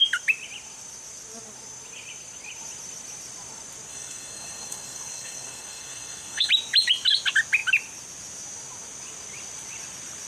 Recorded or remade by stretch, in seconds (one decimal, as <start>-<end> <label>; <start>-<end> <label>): 0.0-3.9 recorded; 3.9-6.5 remade; 6.5-10.3 recorded